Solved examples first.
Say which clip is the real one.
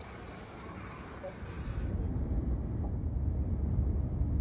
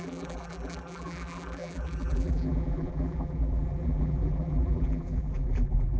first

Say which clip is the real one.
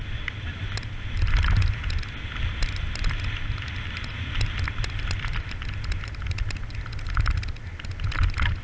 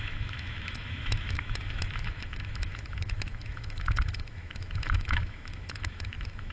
first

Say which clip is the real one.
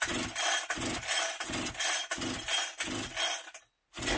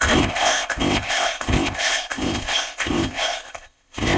first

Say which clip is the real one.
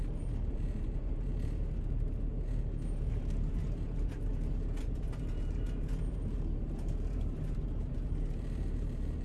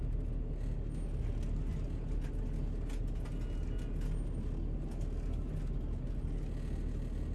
second